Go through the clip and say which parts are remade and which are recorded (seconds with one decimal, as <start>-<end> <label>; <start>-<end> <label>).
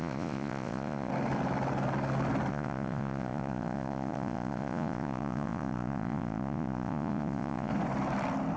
0.0-1.1 remade; 1.1-2.5 recorded; 2.5-7.7 remade; 7.7-8.6 recorded